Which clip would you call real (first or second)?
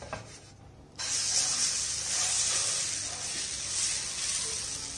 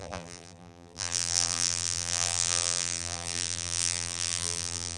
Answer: first